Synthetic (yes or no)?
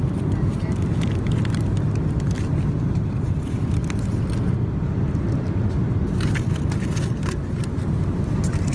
no